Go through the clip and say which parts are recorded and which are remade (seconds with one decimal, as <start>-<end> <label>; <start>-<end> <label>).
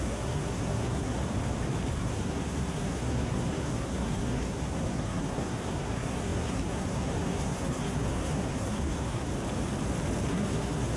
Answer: 0.0-1.2 remade; 1.2-1.9 recorded; 1.9-9.3 remade; 9.3-10.3 recorded; 10.3-11.0 remade